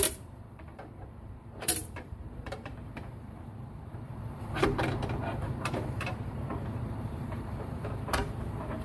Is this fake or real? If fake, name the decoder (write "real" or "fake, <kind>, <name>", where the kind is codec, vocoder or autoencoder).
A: fake, vocoder, BigVGAN v2